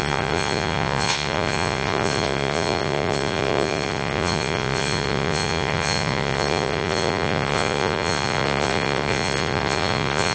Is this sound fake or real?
fake